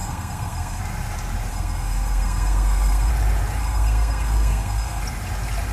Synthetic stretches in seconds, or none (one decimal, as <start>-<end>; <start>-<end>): 0.0-0.8; 1.5-3.1; 3.6-5.0